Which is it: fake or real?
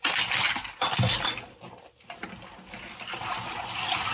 real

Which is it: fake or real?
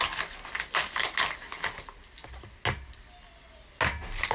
real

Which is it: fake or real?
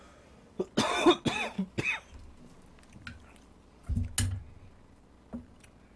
real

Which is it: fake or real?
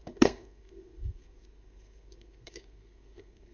fake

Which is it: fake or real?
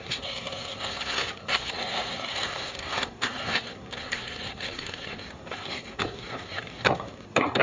fake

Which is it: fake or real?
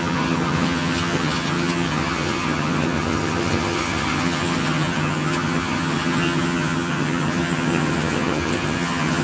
fake